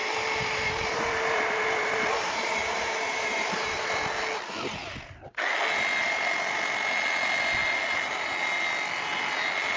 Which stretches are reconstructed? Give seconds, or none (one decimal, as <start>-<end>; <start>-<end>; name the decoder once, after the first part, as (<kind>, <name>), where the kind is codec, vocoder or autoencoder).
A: 0.0-4.0 (vocoder, BigVGAN v2)